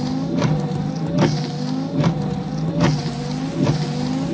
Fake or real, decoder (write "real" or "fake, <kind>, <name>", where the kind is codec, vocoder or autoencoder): real